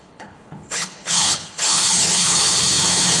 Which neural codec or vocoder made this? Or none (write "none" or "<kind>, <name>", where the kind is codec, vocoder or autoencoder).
codec, HILCodec